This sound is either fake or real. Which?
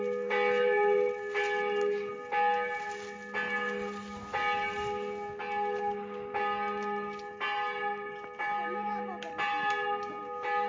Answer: real